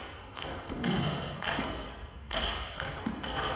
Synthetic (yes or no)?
yes